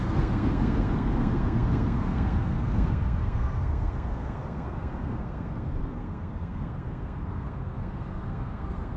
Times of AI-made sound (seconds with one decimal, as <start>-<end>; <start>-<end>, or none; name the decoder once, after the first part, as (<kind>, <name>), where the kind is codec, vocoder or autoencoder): 0.0-9.0 (codec, SNAC)

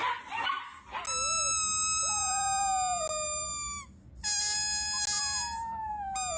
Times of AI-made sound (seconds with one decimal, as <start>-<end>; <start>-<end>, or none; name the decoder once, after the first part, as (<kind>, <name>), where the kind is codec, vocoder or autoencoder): none

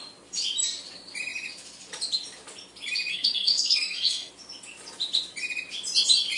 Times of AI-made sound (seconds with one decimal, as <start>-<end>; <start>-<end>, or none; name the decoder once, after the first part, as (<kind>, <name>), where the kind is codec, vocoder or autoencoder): 3.1-4.3 (codec, SNAC)

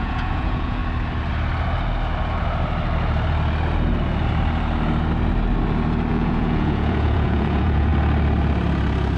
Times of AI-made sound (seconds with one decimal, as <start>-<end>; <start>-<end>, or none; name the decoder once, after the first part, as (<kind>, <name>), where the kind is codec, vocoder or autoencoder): 0.0-0.8 (vocoder, Vocos); 6.1-7.9